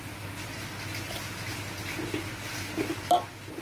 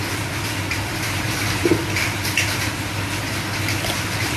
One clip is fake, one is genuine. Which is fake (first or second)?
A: second